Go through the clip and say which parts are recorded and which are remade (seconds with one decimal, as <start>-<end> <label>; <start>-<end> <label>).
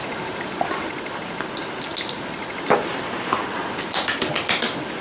0.0-0.6 remade; 0.6-5.0 recorded